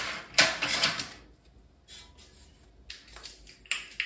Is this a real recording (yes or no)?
yes